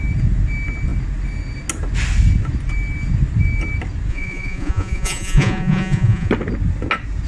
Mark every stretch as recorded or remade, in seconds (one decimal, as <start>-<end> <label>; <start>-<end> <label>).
0.0-4.1 recorded; 4.1-6.3 remade; 6.3-7.3 recorded